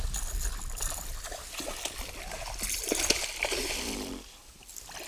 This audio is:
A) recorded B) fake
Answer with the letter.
A